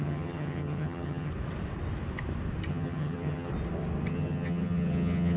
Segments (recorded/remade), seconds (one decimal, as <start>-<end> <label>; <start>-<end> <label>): 0.0-1.3 remade; 1.3-2.7 recorded; 2.7-3.5 remade; 3.5-4.1 recorded; 4.1-5.4 remade